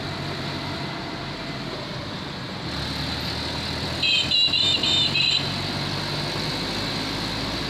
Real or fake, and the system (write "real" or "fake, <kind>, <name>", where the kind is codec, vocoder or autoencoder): real